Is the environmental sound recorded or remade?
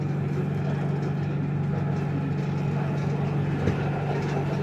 recorded